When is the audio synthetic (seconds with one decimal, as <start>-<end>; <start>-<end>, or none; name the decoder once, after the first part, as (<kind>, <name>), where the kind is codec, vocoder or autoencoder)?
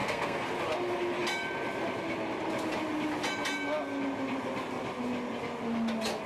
0.0-0.5 (codec, SNAC)